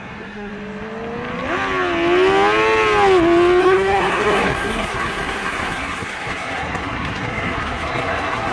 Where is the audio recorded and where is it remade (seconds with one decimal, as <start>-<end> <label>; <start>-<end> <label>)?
0.0-0.5 remade; 0.5-3.6 recorded; 3.6-8.5 remade